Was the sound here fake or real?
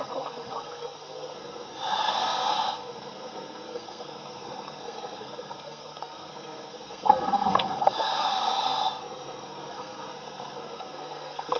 fake